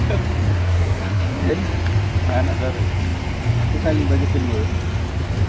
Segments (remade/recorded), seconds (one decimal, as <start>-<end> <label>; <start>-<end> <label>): 0.0-0.5 recorded; 0.5-1.5 remade; 1.5-5.5 recorded

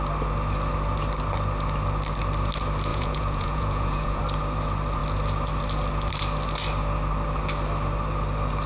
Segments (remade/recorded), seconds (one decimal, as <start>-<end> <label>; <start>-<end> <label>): 0.0-2.9 recorded; 2.9-4.2 remade; 4.2-8.7 recorded

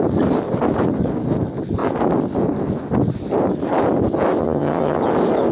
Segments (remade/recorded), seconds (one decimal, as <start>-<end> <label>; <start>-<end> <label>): 0.0-4.4 recorded; 4.4-5.0 remade; 5.0-5.5 recorded